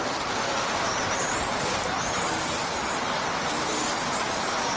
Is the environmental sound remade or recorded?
recorded